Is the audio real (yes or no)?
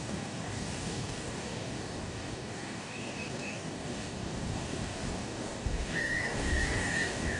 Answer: no